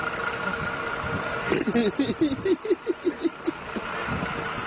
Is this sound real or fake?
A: real